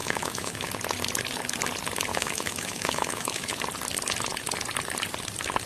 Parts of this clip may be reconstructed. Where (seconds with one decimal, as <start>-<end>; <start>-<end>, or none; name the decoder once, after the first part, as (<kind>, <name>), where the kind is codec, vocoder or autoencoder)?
0.0-0.7 (autoencoder, DAC-VAE); 2.1-3.6